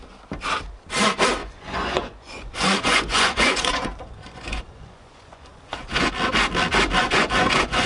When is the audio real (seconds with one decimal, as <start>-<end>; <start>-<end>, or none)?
0.0-1.4; 6.1-7.0